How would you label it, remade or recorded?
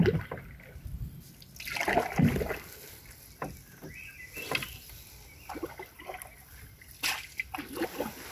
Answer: recorded